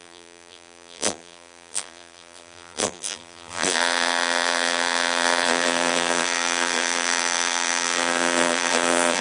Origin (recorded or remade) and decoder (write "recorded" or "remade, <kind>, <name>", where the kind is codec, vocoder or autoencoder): remade, vocoder, BigVGAN v2